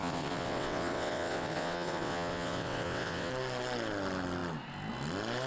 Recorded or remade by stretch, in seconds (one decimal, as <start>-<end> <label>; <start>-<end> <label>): 0.0-3.3 remade; 3.3-5.5 recorded